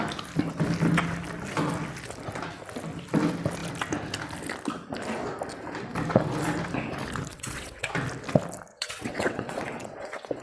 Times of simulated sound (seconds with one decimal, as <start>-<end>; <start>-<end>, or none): 7.3-7.9; 8.7-10.4